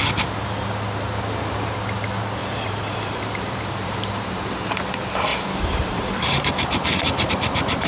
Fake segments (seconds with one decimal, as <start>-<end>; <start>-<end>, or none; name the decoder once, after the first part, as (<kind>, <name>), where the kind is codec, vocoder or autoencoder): 2.4-4.4 (vocoder, BigVGAN v2); 5.3-7.3